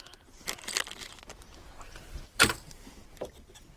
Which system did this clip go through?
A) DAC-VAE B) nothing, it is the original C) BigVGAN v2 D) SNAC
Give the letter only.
B